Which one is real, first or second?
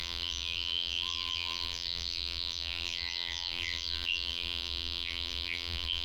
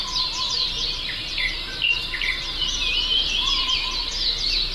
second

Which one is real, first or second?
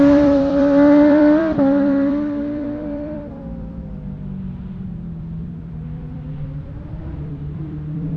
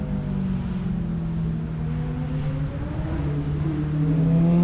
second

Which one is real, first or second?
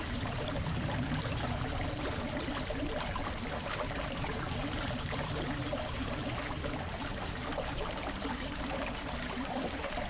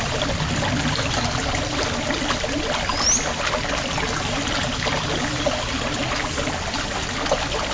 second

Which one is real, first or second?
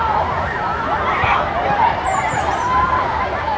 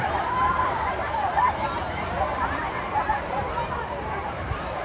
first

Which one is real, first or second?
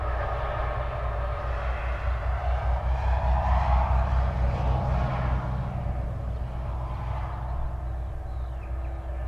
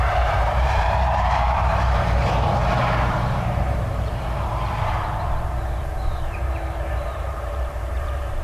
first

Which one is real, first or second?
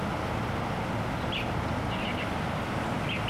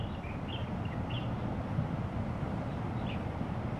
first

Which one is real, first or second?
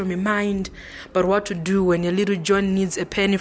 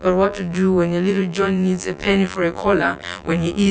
first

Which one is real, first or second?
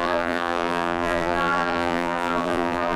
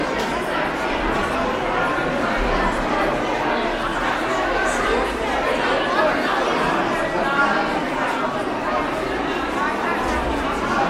second